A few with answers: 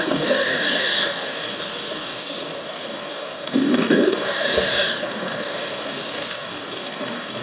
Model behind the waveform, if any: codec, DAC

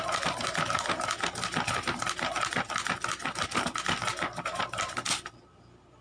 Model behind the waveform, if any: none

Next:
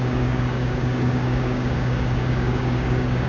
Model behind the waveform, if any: codec, DAC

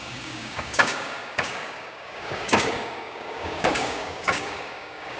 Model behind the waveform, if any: codec, DAC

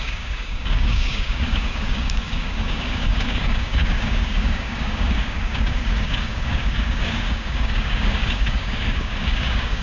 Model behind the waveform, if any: codec, DAC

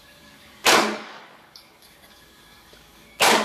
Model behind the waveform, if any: codec, DAC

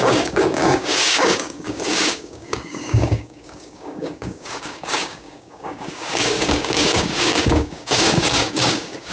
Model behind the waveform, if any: codec, DAC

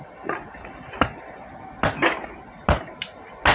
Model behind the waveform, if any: none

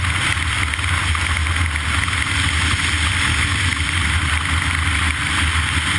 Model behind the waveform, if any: none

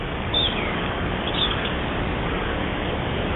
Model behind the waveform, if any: codec, DAC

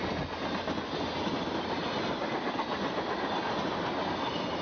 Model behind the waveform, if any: none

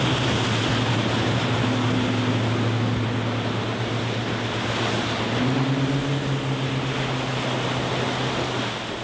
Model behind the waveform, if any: none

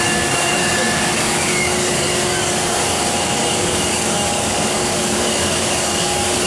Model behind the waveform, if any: codec, DAC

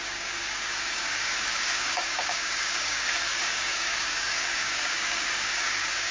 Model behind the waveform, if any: codec, DAC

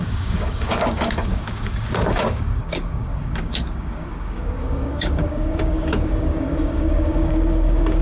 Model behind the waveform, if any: codec, DAC